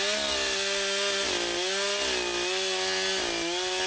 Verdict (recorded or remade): recorded